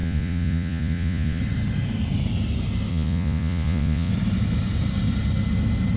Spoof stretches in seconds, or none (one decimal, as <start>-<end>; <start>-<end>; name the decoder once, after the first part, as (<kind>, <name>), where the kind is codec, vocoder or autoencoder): 0.0-1.4 (vocoder, Vocos); 2.9-4.1